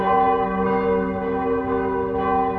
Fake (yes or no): no